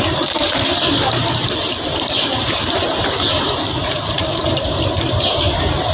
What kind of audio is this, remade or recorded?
remade